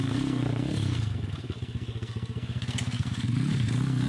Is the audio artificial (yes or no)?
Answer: yes